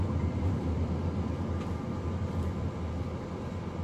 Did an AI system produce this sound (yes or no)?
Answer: no